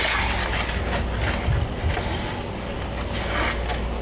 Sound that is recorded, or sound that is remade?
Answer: recorded